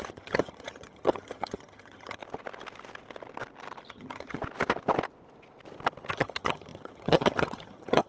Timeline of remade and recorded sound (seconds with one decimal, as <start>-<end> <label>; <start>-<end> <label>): 0.0-2.2 remade; 2.2-3.9 recorded; 3.9-4.4 remade; 4.4-6.1 recorded; 6.1-8.1 remade